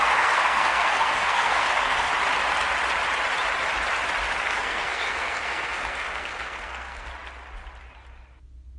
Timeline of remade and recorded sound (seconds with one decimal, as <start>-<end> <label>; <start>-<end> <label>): 0.0-2.1 remade; 2.1-4.4 recorded; 4.4-7.1 remade; 7.1-8.8 recorded